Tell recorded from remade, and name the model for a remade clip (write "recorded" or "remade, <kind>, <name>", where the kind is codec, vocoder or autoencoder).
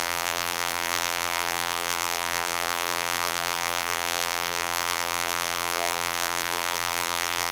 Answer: remade, vocoder, BigVGAN v2